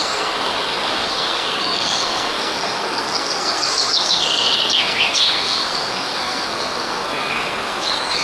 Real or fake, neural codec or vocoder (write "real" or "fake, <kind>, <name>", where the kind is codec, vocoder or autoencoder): fake, codec, SNAC